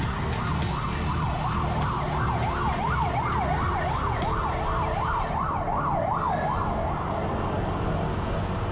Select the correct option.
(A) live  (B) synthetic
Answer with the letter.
A